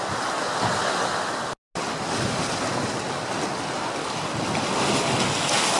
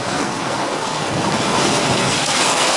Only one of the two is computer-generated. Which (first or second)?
second